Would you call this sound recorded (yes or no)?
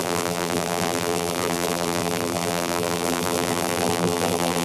no